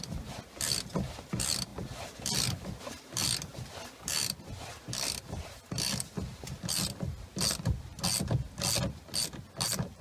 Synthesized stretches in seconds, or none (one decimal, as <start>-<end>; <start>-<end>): none